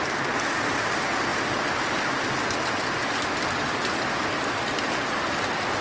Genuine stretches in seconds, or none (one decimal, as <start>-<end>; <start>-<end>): 0.0-5.8